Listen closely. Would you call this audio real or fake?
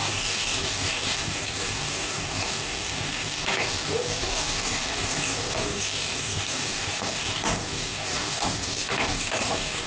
fake